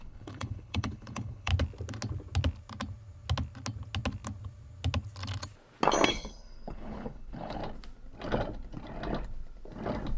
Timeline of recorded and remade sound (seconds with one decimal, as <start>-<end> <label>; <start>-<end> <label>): 0.0-1.5 remade; 1.5-6.1 recorded; 6.1-7.6 remade; 7.6-10.2 recorded